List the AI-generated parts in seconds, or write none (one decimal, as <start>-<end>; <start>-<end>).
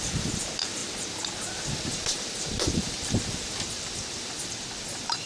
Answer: 1.9-5.3